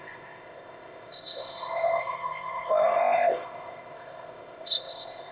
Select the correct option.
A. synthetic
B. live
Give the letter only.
A